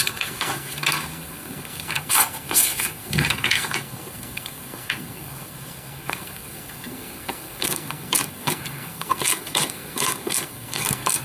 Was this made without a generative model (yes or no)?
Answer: no